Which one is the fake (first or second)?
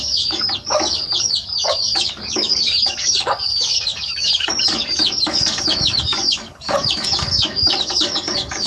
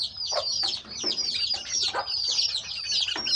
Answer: first